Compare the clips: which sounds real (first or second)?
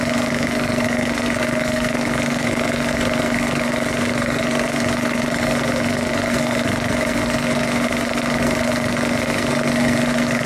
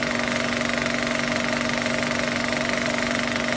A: second